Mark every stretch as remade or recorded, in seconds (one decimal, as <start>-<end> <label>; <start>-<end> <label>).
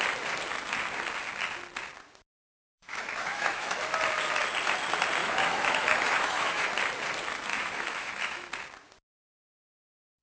0.0-2.5 recorded; 2.5-3.8 remade; 3.8-5.2 recorded; 5.2-6.7 remade; 6.7-7.5 recorded; 7.5-8.5 remade; 8.5-10.2 recorded